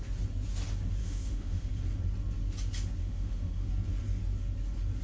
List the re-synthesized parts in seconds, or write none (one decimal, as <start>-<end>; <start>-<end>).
1.0-1.7; 3.0-3.7